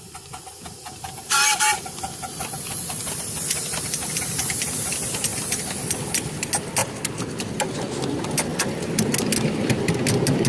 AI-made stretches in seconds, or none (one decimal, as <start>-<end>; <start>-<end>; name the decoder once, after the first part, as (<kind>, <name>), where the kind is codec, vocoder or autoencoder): none